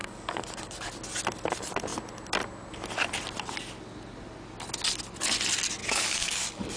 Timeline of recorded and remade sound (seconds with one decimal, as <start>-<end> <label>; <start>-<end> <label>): 0.0-0.9 remade; 0.9-5.8 recorded; 5.8-6.8 remade